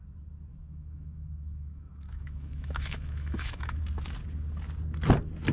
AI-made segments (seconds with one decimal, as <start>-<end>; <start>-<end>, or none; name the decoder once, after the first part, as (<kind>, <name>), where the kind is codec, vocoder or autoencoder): 0.5-3.8 (autoencoder, DAC-VAE)